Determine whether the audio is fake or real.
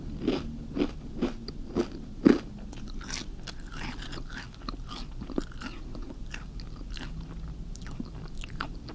real